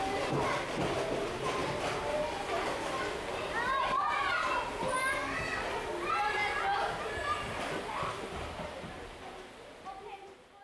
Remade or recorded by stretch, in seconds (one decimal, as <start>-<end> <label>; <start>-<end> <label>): 0.0-10.6 recorded